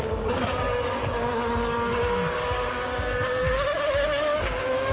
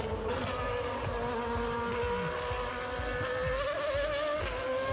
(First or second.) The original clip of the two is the second